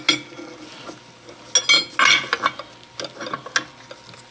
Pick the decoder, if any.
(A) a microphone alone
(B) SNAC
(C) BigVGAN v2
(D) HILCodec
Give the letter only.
A